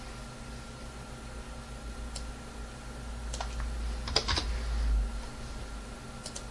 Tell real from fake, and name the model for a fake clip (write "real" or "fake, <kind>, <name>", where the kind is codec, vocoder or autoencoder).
real